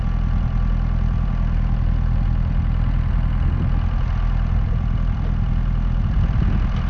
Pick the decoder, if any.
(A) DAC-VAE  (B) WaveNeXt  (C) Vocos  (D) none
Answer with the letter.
D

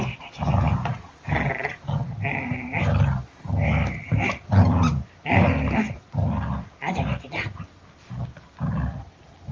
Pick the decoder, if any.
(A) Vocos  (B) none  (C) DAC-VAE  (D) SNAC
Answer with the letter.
B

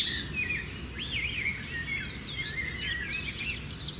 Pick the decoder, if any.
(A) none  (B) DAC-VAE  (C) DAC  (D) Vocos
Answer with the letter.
A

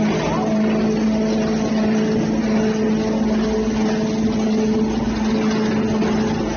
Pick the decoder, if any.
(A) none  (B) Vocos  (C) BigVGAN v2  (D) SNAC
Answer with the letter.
A